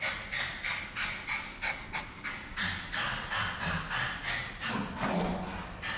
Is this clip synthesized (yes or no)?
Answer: no